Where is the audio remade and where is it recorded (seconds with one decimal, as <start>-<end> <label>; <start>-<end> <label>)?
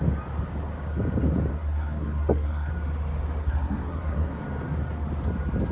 0.0-1.5 recorded; 1.5-2.7 remade; 2.7-3.4 recorded; 3.4-4.4 remade; 4.4-5.7 recorded